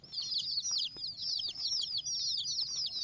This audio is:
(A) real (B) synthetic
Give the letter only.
A